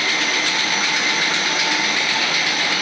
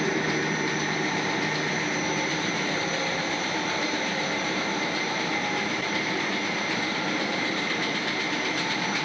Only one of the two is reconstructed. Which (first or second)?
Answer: second